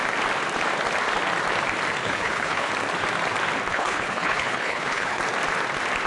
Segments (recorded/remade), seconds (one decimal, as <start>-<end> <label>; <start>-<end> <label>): 0.0-2.0 recorded; 2.0-2.7 remade; 2.7-3.7 recorded; 3.7-5.2 remade; 5.2-6.1 recorded